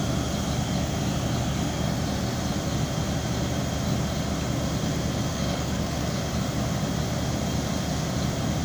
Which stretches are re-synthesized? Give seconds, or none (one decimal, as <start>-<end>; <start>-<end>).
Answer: 5.3-6.2